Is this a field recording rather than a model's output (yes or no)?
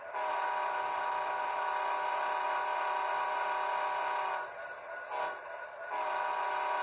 yes